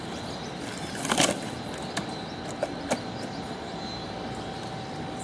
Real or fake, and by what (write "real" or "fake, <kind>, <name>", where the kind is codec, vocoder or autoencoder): real